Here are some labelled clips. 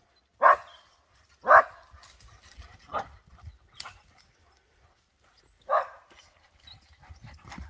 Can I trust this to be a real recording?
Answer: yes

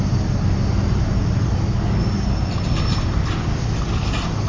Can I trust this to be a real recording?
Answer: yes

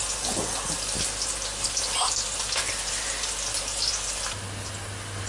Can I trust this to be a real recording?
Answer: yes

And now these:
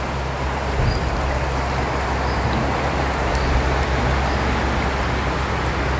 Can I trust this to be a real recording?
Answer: yes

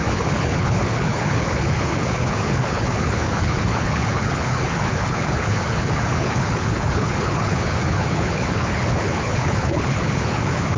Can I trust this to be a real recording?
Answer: no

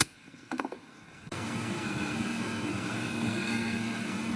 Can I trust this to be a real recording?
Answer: no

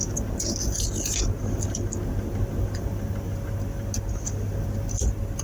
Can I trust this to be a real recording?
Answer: yes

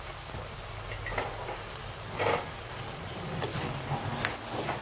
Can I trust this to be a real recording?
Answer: yes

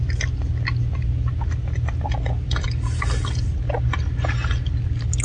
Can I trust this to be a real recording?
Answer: yes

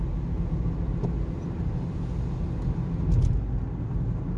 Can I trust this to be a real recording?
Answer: yes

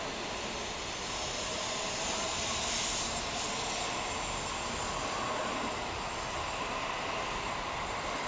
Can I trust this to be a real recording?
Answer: yes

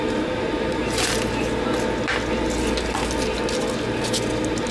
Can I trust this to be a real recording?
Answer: yes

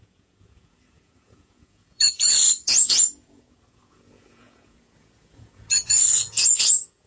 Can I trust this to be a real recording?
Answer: no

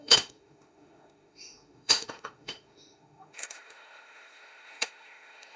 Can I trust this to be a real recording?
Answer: no